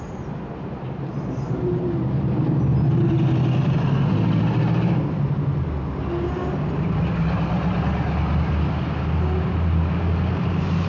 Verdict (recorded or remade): recorded